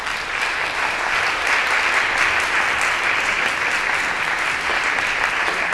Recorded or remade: remade